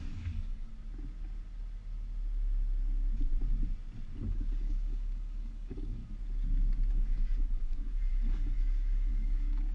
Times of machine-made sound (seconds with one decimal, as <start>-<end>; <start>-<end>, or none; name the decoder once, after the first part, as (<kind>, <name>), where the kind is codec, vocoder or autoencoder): 0.0-0.7 (codec, DAC); 4.3-6.0; 6.9-9.7